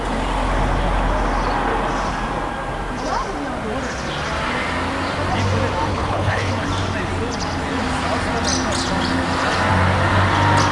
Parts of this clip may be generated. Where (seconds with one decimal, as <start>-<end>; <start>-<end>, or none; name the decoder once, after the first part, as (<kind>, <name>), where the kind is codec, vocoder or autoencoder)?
5.9-6.5 (codec, HILCodec)